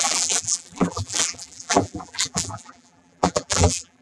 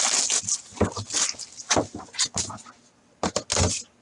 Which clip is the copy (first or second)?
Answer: first